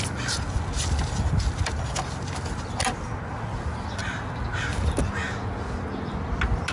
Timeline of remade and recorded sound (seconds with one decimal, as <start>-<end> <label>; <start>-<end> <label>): 0.0-6.7 recorded